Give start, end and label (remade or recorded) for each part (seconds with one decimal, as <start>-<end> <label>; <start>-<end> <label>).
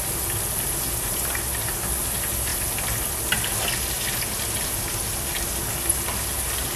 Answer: 0.0-6.8 recorded